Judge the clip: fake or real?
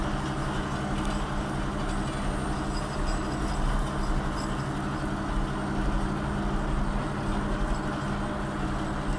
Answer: real